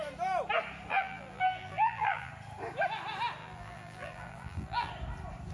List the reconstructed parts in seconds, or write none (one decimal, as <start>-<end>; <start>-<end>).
0.9-2.3; 3.4-4.9